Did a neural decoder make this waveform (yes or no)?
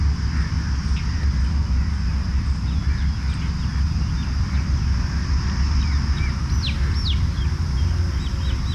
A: no